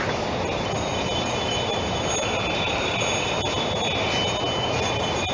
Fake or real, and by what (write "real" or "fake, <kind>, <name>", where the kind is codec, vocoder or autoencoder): real